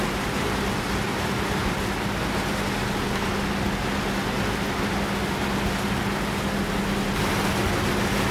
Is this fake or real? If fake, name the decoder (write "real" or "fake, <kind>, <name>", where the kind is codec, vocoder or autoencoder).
real